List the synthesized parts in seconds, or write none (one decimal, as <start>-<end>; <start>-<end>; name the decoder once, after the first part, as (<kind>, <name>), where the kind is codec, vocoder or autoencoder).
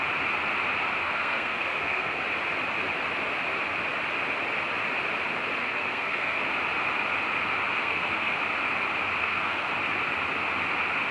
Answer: 1.0-2.2 (codec, SNAC); 5.6-6.4; 7.8-8.4; 9.2-9.7